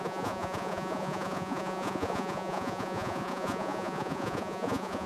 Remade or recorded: remade